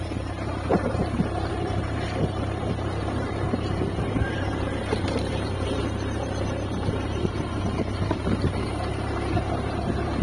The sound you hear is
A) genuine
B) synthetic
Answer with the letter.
B